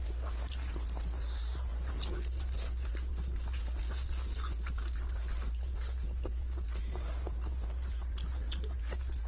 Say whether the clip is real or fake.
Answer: real